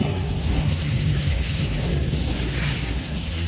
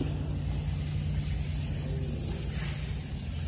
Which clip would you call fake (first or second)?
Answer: first